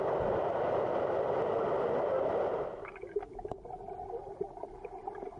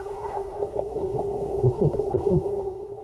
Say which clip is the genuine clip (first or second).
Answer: first